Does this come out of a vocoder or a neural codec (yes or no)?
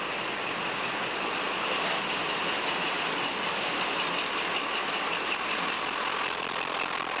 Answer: no